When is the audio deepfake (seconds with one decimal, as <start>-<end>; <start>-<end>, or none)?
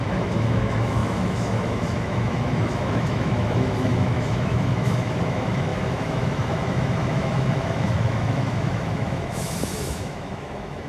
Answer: 0.0-10.9